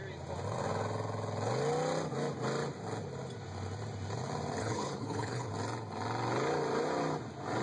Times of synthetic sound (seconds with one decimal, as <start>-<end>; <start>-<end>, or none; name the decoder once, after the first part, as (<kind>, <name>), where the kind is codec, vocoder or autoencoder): 4.6-5.5 (codec, HILCodec)

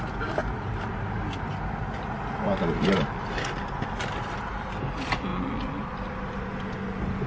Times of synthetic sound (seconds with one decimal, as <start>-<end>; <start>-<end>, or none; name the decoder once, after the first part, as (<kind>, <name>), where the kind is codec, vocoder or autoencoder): none

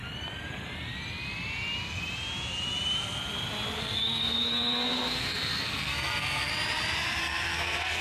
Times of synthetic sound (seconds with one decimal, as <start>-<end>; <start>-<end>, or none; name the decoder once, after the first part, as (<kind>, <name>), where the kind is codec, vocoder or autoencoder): 3.8-6.5 (codec, SNAC); 7.2-8.0